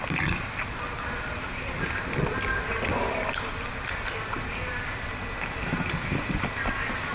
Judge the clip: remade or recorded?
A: recorded